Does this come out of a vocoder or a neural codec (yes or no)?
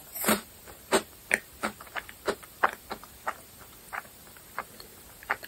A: yes